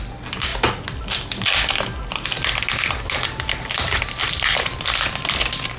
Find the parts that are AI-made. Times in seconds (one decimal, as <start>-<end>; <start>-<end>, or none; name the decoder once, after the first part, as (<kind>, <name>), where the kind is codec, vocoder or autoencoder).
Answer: none

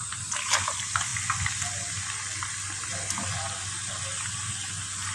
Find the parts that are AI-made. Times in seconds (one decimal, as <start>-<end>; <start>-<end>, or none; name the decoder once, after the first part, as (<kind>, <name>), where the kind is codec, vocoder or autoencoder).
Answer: none